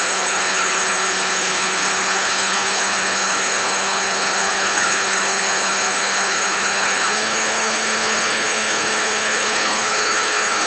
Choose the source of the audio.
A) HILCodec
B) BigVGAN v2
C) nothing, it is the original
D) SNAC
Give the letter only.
A